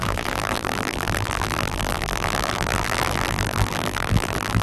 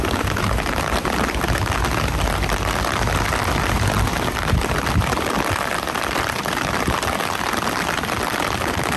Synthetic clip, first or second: first